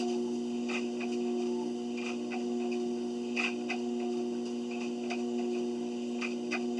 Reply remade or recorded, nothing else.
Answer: recorded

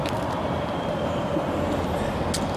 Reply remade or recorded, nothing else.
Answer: recorded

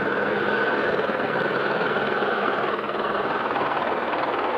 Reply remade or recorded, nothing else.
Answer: remade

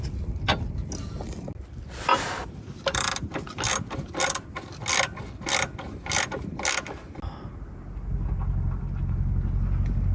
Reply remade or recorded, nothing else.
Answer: recorded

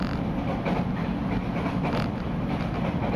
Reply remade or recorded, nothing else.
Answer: recorded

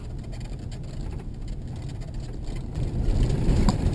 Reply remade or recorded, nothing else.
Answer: recorded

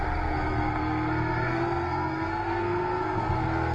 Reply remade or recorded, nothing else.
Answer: remade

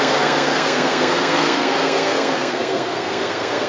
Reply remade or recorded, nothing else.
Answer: remade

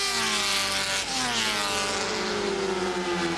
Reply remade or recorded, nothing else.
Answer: recorded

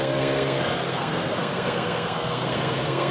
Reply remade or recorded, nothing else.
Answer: remade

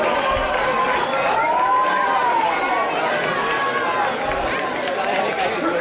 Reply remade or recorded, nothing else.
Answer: recorded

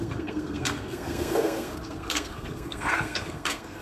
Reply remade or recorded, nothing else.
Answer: remade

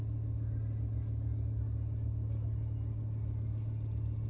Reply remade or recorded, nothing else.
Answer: recorded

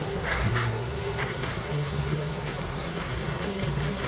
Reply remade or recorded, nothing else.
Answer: remade